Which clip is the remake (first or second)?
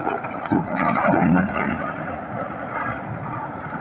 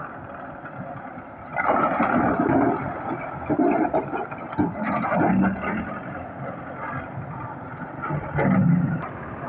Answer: first